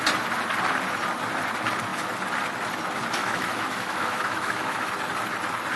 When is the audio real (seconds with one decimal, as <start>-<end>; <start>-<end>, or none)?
0.0-3.2; 4.9-5.8